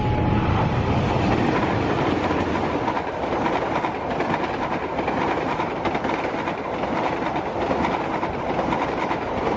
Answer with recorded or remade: recorded